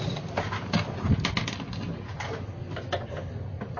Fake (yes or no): no